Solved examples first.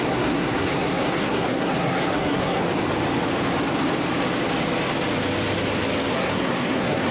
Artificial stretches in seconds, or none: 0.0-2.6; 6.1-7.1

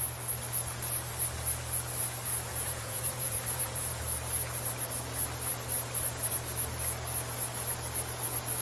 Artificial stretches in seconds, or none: 2.5-4.0